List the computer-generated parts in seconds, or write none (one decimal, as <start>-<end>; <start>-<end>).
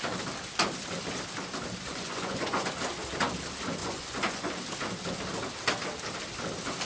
1.9-2.7; 3.8-4.5